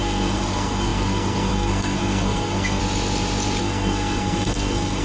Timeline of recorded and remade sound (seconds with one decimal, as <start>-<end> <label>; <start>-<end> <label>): 0.0-2.8 remade; 2.8-3.6 recorded; 3.6-5.0 remade